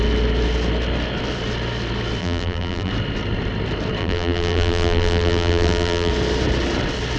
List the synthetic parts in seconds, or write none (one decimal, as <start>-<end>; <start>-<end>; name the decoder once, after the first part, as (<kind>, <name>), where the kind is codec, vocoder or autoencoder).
2.2-2.9 (vocoder, BigVGAN v2); 4.0-6.1